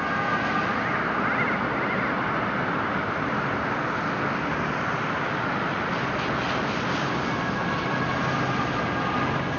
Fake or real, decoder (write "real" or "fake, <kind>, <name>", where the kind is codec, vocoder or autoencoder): real